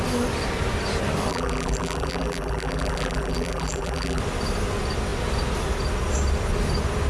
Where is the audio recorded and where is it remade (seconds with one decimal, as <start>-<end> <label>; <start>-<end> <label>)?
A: 0.0-1.3 recorded; 1.3-4.2 remade; 4.2-7.1 recorded